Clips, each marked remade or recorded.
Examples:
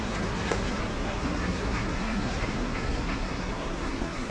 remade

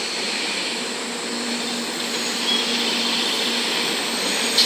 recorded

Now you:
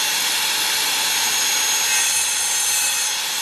recorded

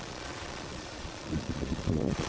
remade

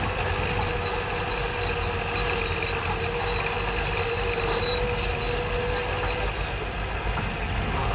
recorded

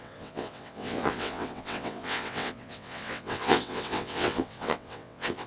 remade